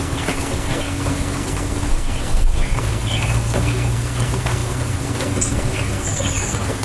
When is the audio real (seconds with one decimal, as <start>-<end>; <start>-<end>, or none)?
none